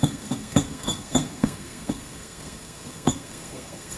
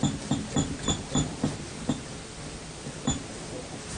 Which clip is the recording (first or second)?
second